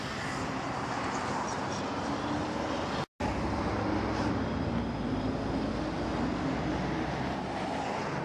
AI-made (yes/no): no